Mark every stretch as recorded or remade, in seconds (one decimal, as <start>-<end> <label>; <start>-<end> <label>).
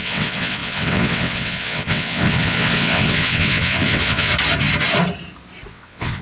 0.0-4.3 remade; 4.3-5.7 recorded; 5.7-6.2 remade